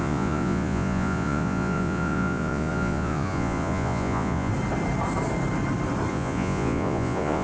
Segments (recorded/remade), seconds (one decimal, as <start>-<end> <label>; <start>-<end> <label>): 0.0-4.5 remade; 4.5-6.1 recorded; 6.1-7.4 remade